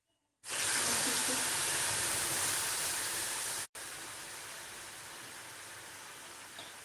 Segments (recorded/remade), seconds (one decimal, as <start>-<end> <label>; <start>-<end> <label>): 0.0-1.2 recorded; 1.2-4.9 remade; 4.9-6.8 recorded